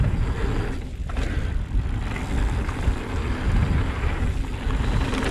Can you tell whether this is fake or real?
real